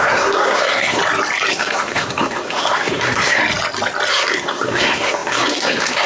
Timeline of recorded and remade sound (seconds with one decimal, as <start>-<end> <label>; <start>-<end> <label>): 0.0-1.0 remade; 1.0-1.5 recorded; 1.5-3.4 remade; 3.4-4.1 recorded; 4.1-6.1 remade